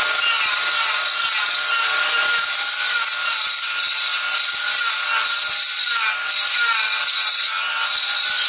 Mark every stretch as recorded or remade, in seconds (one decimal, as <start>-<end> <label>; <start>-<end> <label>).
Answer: 0.0-8.5 recorded